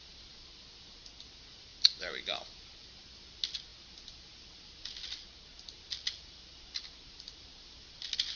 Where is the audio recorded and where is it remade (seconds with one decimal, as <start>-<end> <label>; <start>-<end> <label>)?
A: 0.0-8.4 recorded